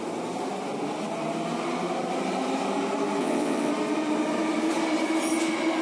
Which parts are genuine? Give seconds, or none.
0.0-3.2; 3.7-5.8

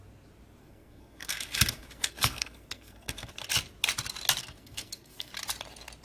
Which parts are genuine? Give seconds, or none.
0.0-0.6; 3.3-4.4; 5.3-6.0

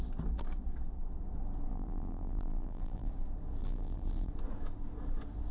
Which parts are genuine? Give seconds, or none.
0.0-1.7; 3.1-3.6; 4.3-5.5

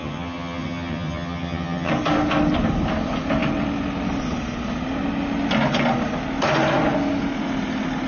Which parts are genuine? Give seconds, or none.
1.9-8.1

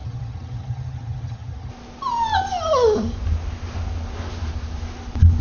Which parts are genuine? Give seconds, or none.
1.7-5.4

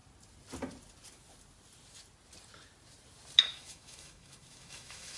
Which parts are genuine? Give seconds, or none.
0.0-3.5

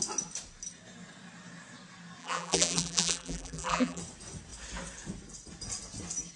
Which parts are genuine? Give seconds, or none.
0.0-2.2; 4.0-6.4

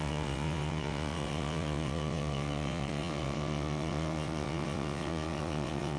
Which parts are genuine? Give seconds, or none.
none